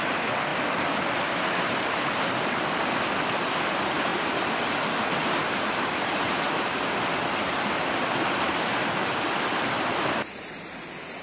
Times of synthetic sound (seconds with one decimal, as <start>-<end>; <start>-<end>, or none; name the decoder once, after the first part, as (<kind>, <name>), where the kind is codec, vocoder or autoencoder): none